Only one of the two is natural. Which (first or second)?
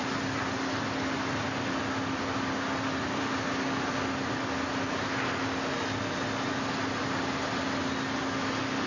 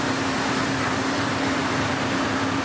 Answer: first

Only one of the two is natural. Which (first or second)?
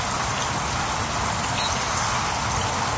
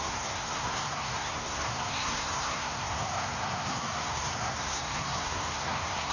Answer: first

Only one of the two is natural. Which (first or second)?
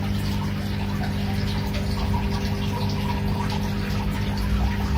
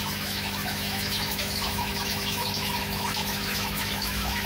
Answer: first